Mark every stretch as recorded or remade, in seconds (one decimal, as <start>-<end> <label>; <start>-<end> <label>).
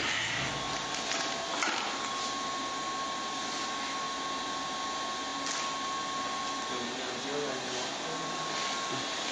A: 0.0-9.3 recorded